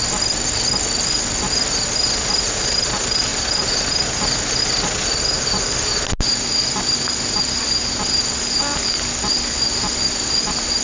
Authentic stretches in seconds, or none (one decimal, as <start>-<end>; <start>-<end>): 0.0-10.8